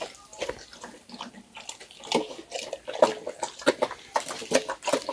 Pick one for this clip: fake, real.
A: real